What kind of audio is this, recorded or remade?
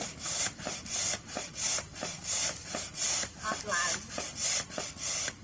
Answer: recorded